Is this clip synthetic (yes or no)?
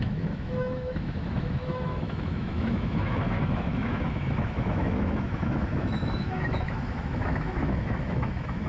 yes